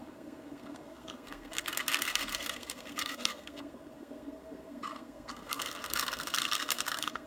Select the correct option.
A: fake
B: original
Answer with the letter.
A